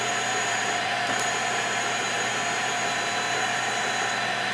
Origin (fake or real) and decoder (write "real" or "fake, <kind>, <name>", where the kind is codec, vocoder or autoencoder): fake, vocoder, BigVGAN v2